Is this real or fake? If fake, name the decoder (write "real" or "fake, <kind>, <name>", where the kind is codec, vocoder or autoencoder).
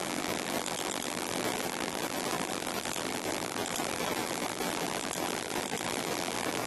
fake, vocoder, BigVGAN v2